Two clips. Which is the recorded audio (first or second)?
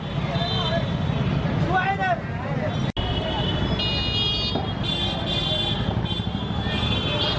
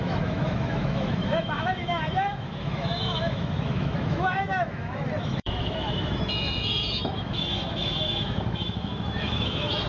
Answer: first